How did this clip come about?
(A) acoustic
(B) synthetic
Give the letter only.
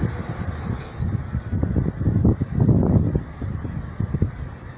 A